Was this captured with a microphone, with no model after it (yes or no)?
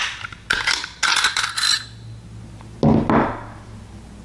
yes